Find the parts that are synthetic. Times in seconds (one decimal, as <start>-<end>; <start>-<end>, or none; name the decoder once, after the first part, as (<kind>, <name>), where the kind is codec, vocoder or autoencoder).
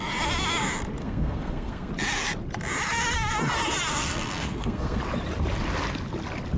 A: 1.0-1.9 (codec, SNAC); 3.9-5.0